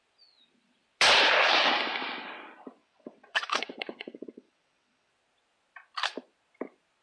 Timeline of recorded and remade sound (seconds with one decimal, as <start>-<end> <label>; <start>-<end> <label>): 0.0-2.8 recorded; 2.8-5.1 remade; 5.1-7.0 recorded